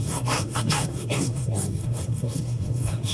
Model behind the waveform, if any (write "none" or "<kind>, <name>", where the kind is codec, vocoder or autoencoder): codec, SNAC